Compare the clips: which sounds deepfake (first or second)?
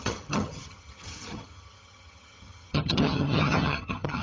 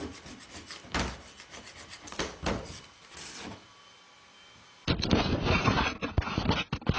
first